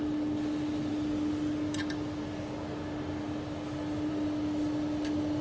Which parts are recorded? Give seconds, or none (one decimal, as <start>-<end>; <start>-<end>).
0.0-5.4